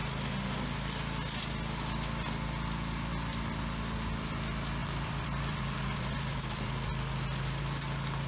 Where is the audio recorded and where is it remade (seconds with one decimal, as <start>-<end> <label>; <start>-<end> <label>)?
0.0-4.8 recorded; 4.8-7.6 remade; 7.6-8.3 recorded